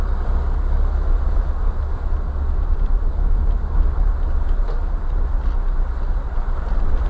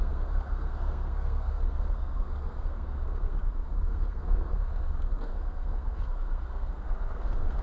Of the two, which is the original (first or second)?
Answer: first